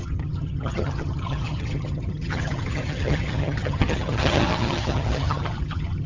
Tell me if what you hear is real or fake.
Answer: fake